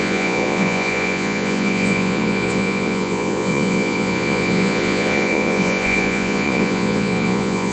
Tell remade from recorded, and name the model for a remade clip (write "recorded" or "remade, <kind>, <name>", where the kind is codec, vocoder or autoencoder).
remade, vocoder, Vocos